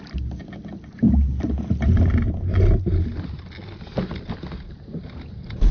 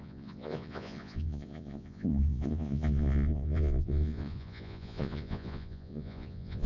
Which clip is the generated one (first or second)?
second